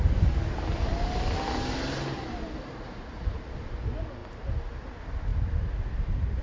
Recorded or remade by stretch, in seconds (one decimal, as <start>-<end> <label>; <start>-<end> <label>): 0.0-6.4 recorded